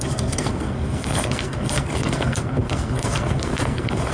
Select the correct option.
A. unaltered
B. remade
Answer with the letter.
B